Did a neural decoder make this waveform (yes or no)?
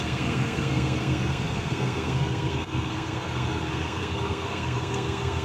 yes